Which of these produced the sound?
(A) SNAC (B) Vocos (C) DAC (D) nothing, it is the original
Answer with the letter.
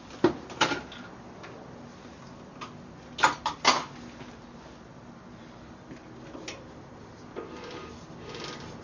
D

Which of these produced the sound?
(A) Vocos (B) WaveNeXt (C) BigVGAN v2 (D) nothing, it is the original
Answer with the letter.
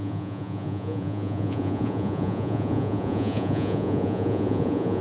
A